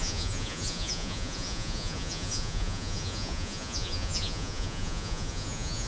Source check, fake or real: fake